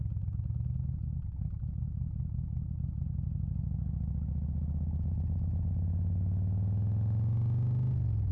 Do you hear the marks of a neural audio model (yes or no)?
no